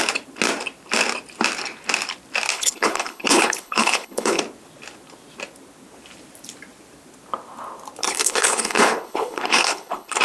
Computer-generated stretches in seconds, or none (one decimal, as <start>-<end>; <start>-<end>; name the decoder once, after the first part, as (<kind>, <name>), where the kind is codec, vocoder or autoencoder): 2.5-4.4 (codec, HILCodec); 8.0-10.2